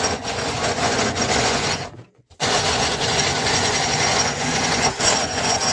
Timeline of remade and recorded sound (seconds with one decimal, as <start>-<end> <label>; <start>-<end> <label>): 0.0-5.7 remade